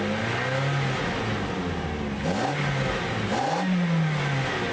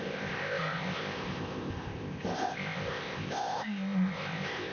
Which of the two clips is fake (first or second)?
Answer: second